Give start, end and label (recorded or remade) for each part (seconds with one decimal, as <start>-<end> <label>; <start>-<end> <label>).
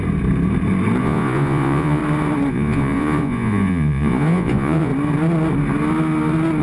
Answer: 0.0-1.0 recorded; 1.0-2.0 remade; 2.0-2.5 recorded; 2.5-4.9 remade; 4.9-6.6 recorded